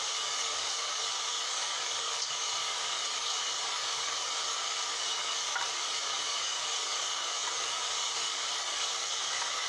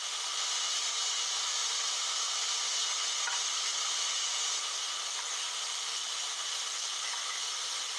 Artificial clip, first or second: first